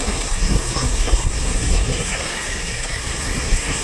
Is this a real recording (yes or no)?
no